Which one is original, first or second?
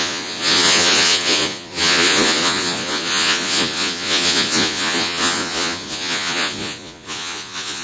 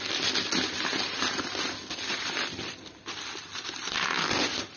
second